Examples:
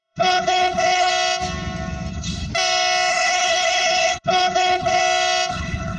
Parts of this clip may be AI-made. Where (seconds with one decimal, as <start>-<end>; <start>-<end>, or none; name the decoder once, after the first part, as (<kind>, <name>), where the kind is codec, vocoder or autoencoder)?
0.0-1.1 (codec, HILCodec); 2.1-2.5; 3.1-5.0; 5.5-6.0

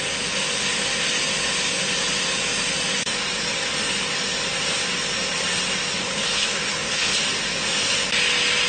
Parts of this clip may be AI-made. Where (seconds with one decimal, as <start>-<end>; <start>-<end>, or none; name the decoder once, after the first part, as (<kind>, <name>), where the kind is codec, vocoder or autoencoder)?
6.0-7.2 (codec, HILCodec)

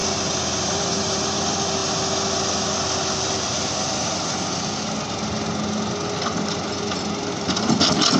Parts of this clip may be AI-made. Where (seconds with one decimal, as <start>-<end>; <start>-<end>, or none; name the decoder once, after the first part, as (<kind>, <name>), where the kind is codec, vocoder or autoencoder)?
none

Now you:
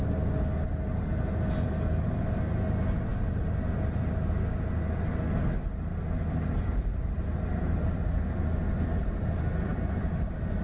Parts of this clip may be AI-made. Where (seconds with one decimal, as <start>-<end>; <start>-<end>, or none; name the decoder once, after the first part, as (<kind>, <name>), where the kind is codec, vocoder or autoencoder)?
5.9-8.8 (vocoder, BigVGAN v2); 9.7-10.6

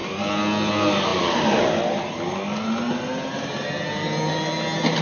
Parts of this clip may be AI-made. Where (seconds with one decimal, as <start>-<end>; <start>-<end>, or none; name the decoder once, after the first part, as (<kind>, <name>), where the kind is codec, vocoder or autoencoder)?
none

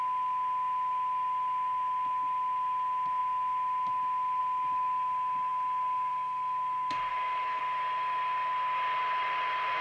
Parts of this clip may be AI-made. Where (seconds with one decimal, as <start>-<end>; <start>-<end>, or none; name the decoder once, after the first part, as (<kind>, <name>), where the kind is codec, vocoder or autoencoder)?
7.1-7.6 (autoencoder, DAC-VAE)